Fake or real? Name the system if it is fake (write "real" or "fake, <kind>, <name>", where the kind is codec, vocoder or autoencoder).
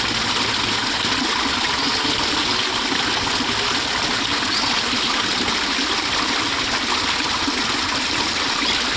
real